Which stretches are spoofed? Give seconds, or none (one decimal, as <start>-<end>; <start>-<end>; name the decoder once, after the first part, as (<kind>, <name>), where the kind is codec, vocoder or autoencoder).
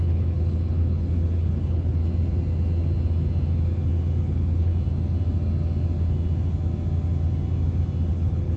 0.0-2.0 (codec, HILCodec); 4.2-4.7; 8.1-8.6